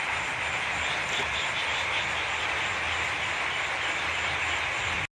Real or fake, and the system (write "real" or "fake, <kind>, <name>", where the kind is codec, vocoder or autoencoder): real